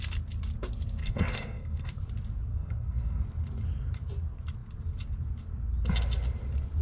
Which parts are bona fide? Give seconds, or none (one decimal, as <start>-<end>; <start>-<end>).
0.0-1.0; 1.9-2.5; 3.2-6.8